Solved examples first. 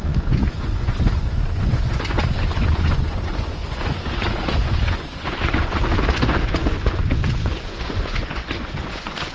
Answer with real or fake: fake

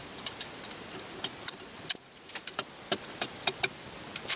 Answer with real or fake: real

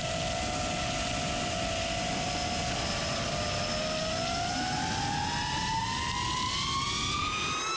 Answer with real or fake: real